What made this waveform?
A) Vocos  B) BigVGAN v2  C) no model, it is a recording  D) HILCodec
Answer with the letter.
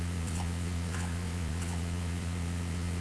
A